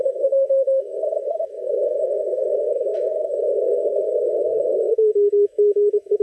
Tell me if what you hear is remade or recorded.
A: remade